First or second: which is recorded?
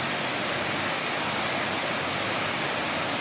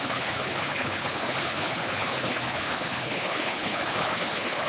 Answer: first